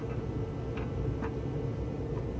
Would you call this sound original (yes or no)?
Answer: yes